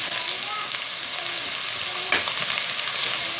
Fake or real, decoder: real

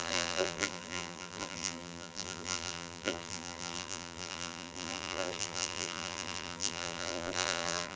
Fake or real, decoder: fake, vocoder, BigVGAN v2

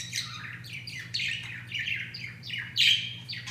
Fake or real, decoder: fake, vocoder, BigVGAN v2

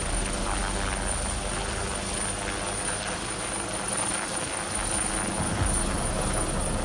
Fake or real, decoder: real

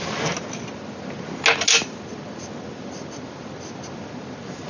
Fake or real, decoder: real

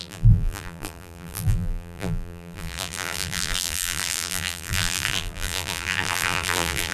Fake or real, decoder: fake, vocoder, BigVGAN v2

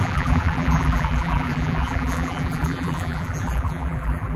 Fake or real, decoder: fake, vocoder, BigVGAN v2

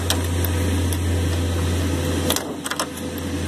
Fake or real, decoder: real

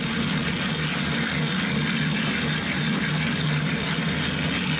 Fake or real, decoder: real